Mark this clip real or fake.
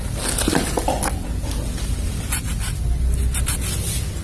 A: real